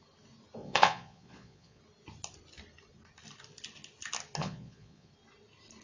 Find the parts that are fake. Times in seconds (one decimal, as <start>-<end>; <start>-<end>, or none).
0.6-1.8; 4.4-5.1

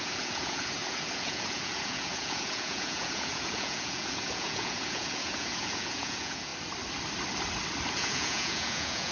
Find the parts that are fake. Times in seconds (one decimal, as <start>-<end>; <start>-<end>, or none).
0.0-6.5; 7.9-9.1

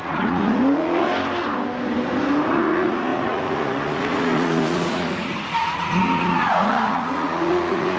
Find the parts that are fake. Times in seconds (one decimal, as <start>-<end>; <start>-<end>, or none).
0.0-1.1; 2.5-8.0

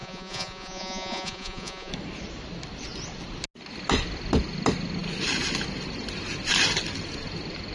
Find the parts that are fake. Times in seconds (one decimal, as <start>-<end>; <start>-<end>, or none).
0.0-1.9

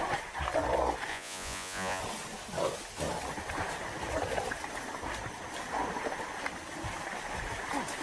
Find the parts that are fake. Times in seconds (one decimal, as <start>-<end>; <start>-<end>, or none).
1.1-2.0

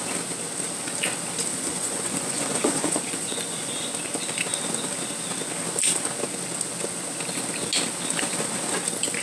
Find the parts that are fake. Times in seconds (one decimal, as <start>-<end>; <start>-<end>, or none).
1.5-3.9

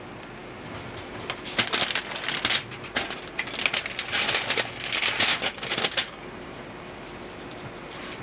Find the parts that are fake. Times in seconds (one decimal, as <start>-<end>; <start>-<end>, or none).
none